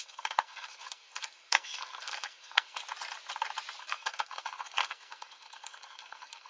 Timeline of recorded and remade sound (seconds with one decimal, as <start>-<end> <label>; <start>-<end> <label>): 0.0-2.8 remade; 2.8-3.8 recorded; 3.8-6.5 remade